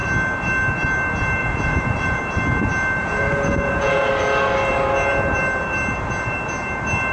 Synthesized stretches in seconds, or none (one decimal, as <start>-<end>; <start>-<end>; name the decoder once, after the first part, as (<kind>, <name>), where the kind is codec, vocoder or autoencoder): 1.4-2.2 (vocoder, Vocos); 3.0-4.1